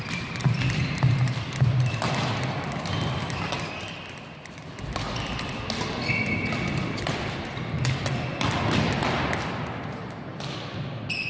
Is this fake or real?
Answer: real